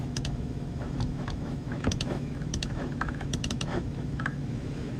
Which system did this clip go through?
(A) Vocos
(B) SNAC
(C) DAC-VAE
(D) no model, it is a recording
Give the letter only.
C